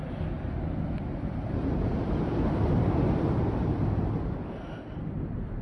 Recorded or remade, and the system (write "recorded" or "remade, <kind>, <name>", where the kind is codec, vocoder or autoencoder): recorded